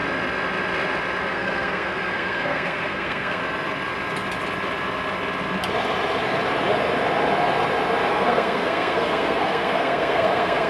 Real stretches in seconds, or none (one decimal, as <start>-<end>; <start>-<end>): 0.0-1.3; 3.4-8.1